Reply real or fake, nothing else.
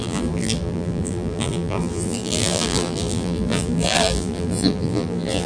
fake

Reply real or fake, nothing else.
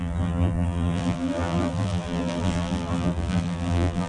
fake